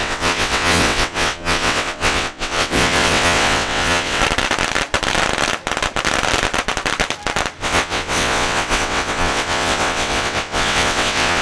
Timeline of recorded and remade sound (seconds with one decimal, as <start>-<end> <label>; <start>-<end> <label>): 0.0-4.2 remade; 4.2-7.6 recorded; 7.6-11.4 remade